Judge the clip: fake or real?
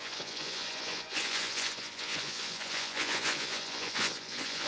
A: fake